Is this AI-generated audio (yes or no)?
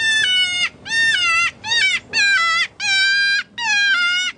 no